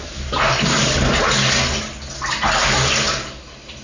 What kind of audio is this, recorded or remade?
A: recorded